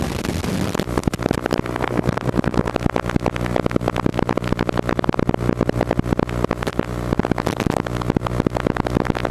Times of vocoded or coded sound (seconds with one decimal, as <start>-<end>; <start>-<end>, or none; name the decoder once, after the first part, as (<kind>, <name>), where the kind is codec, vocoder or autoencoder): 1.8-2.7 (codec, SNAC)